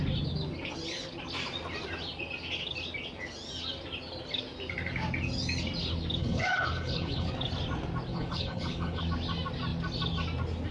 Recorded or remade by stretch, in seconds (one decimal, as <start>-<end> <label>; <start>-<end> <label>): 0.0-6.2 recorded; 6.2-7.3 remade; 7.3-8.1 recorded; 8.1-9.0 remade; 9.0-10.7 recorded